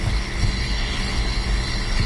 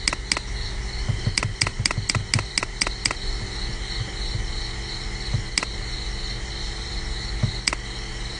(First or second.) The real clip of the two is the second